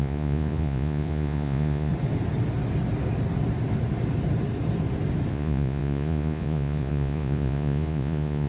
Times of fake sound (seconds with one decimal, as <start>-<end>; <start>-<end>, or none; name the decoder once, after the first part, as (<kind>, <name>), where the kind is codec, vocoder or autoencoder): 0.0-1.9 (vocoder, Vocos); 5.3-8.5